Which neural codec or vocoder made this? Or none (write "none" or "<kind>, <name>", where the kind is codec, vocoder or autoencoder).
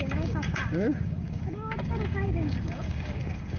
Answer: codec, DAC